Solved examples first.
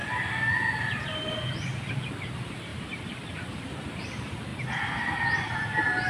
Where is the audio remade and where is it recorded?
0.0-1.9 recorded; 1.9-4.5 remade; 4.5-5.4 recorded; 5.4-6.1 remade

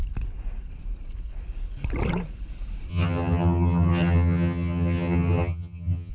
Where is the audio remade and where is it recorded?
0.0-2.9 recorded; 2.9-6.1 remade

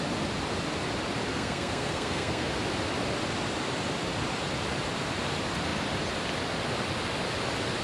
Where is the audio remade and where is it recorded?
0.0-1.3 recorded; 1.3-2.5 remade; 2.5-7.8 recorded

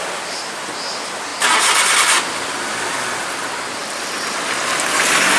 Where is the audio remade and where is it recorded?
0.0-5.4 recorded

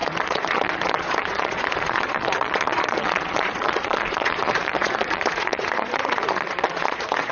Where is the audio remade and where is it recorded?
0.0-7.3 remade

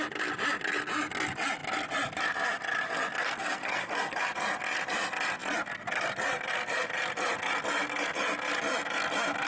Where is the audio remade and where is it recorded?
0.0-3.2 recorded; 3.2-4.2 remade; 4.2-9.5 recorded

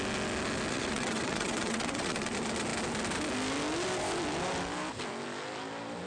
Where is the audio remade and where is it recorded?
0.0-0.7 recorded; 0.7-2.3 remade; 2.3-6.1 recorded